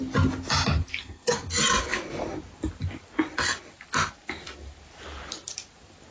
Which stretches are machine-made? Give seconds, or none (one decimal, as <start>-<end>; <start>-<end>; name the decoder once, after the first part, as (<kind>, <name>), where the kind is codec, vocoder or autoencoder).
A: 1.0-1.5 (codec, SNAC)